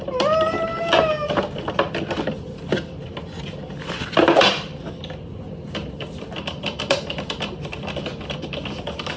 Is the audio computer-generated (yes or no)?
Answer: no